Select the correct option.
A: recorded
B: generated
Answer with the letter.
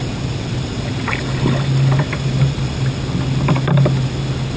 A